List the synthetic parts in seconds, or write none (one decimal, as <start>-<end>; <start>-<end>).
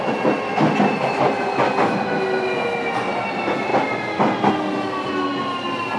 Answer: none